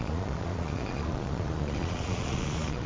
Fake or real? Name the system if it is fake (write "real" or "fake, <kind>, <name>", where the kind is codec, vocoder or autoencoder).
fake, vocoder, Vocos